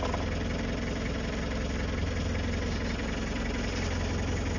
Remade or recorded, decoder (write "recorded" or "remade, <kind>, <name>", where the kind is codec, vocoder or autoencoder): recorded